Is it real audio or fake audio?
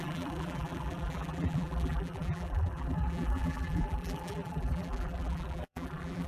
fake